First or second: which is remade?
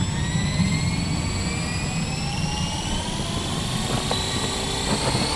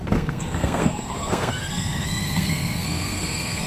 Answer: second